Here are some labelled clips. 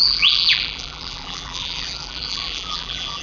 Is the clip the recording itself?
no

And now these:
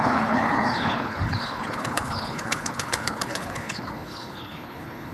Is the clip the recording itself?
no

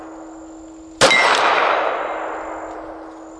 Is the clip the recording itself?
yes